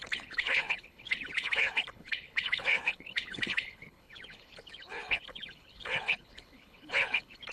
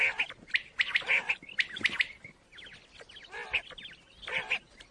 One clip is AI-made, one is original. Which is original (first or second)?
second